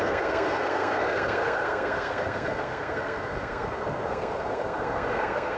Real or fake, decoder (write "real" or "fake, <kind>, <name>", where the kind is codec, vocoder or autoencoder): fake, codec, SNAC